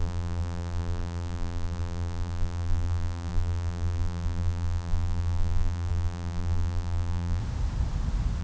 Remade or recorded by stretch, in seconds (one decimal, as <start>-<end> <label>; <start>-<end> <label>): 0.0-7.4 remade; 7.4-8.4 recorded